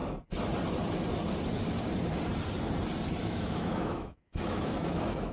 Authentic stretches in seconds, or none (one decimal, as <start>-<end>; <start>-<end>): 0.0-3.2